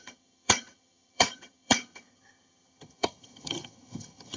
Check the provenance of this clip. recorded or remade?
remade